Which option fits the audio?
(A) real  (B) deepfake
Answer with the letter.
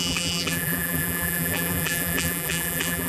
B